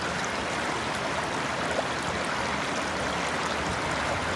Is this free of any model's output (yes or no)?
yes